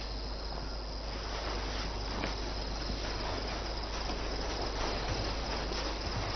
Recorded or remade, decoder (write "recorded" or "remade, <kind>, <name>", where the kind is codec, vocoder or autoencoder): recorded